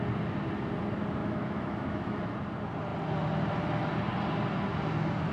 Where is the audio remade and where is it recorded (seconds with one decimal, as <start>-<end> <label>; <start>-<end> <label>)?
0.0-1.2 recorded; 1.2-2.2 remade; 2.2-5.3 recorded